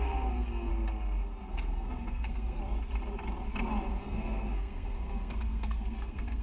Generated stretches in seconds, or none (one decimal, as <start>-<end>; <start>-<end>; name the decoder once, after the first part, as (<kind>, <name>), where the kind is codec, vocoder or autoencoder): 0.0-0.7 (codec, SNAC); 1.5-2.6; 4.0-6.4